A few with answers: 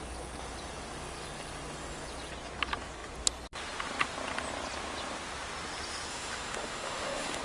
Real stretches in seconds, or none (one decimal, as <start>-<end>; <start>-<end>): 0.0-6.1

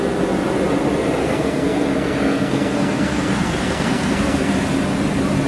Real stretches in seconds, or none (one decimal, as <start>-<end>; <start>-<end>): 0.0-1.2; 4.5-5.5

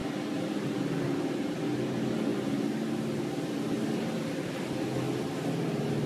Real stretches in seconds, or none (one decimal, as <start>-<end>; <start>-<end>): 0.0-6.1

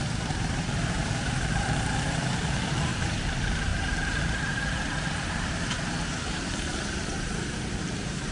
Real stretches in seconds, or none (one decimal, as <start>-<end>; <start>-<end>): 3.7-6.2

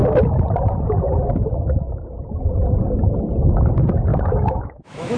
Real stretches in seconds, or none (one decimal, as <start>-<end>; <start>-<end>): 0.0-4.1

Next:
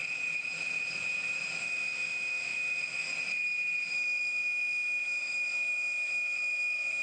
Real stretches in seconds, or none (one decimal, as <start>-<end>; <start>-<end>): 0.0-1.6; 3.1-3.9

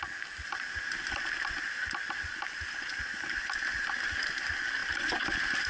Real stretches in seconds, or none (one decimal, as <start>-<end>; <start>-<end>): 0.0-5.7

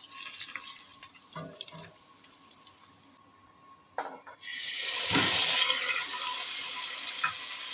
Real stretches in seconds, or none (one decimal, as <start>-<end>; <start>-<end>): 0.0-0.9; 2.6-7.7